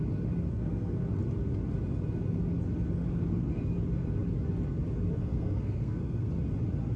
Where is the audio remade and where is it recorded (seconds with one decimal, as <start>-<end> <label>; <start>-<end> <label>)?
0.0-0.5 recorded; 0.5-1.0 remade; 1.0-3.0 recorded; 3.0-3.6 remade; 3.6-5.2 recorded; 5.2-6.3 remade; 6.3-7.0 recorded